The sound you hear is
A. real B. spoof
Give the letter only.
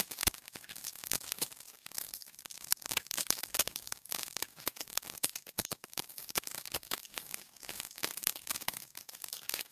B